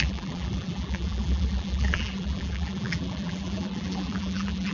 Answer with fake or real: fake